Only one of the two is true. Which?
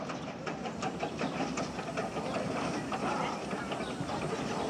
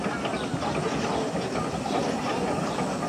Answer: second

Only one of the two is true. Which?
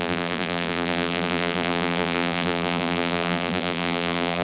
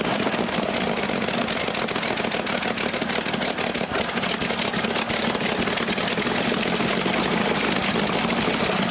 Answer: second